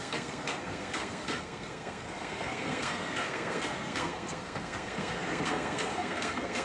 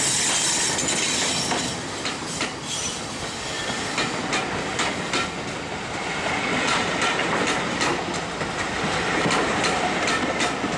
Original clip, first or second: second